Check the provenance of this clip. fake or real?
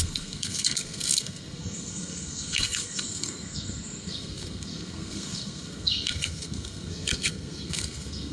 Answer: fake